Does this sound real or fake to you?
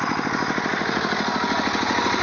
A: real